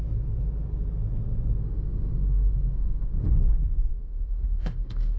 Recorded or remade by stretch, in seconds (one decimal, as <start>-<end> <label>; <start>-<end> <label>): 0.0-1.6 recorded; 1.6-3.3 remade; 3.3-3.9 recorded; 3.9-5.2 remade